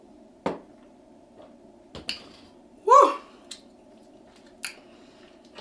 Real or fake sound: real